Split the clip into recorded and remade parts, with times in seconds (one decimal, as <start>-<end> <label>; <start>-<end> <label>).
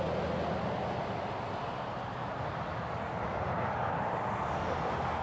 0.0-5.2 recorded